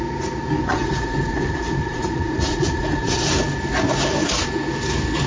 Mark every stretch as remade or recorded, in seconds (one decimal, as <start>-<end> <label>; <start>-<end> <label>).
0.0-0.7 recorded; 0.7-3.3 remade; 3.3-5.3 recorded